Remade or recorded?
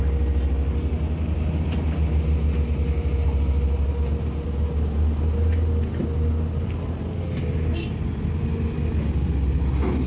recorded